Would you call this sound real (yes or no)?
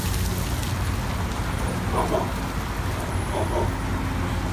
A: yes